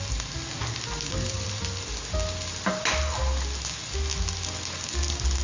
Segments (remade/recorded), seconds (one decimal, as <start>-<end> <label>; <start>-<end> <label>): 0.0-0.6 recorded; 0.6-1.5 remade; 1.5-5.4 recorded